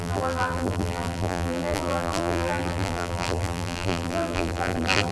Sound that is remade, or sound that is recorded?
remade